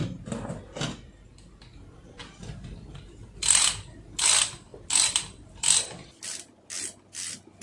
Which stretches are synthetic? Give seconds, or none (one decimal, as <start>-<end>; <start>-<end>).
none